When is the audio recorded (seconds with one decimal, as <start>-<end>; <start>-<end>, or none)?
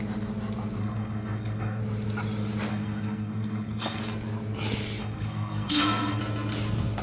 0.0-0.8; 1.8-2.7; 4.0-5.0; 6.2-7.0